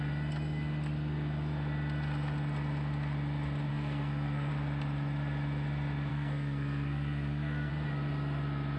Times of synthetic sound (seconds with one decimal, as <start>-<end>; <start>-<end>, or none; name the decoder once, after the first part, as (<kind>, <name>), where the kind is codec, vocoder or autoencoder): 3.7-4.5 (codec, SNAC); 6.1-7.7